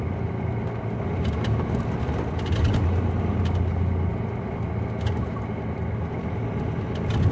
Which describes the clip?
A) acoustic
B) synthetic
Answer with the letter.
A